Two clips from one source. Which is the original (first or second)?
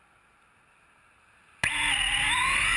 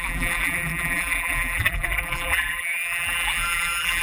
first